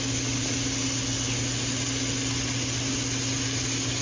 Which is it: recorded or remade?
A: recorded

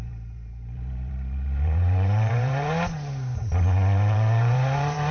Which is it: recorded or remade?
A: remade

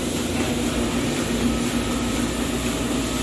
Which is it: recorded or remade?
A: recorded